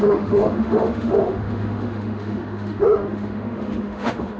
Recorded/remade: remade